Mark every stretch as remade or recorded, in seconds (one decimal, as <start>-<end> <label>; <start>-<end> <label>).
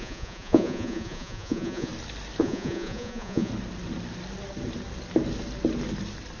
0.0-1.9 remade; 1.9-2.4 recorded; 2.4-3.5 remade; 3.5-6.4 recorded